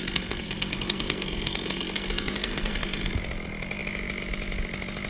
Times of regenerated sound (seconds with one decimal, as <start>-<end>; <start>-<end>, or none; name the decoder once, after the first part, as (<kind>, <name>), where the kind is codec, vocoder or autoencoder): 0.0-3.1 (codec, SNAC)